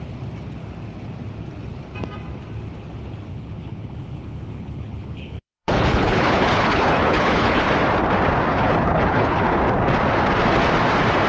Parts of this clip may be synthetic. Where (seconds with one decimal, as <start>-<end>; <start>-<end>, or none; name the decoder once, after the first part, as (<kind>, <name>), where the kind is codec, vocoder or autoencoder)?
3.3-7.6 (codec, HILCodec); 8.5-9.6